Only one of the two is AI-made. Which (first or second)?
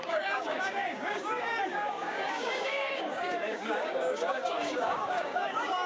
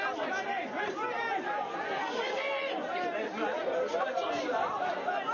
first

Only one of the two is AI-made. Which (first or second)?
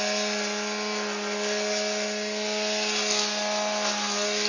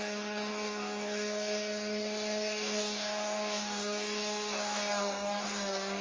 second